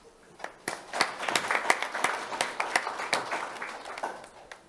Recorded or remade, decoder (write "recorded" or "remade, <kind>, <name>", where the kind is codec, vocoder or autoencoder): recorded